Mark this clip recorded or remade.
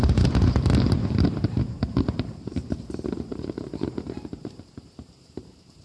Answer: remade